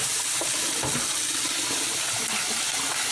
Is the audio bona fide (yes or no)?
yes